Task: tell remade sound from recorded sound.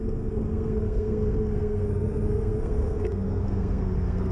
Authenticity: remade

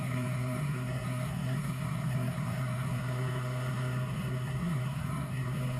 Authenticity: remade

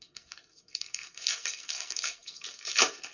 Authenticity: remade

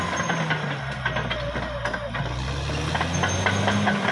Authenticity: recorded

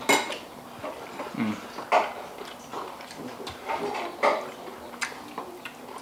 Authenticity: recorded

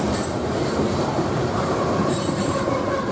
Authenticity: remade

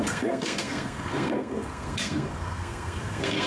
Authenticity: remade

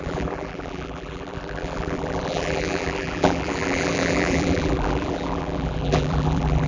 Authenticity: remade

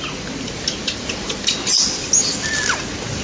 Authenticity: recorded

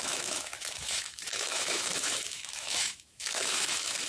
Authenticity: remade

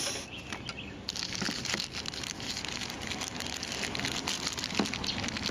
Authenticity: recorded